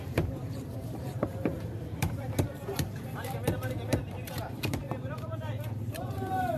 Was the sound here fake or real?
fake